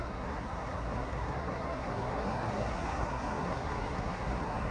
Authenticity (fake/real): fake